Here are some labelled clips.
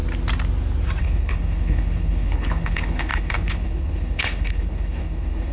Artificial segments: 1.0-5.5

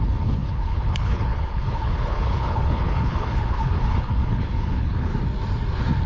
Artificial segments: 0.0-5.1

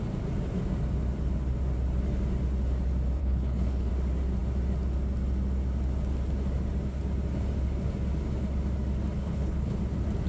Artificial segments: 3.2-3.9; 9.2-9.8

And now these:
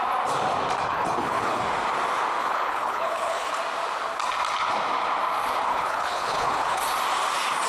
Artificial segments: 0.9-1.6; 2.4-3.5; 5.7-6.8

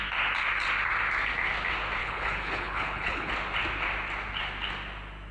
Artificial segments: 2.0-3.3

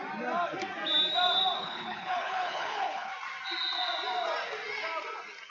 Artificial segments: 1.6-3.1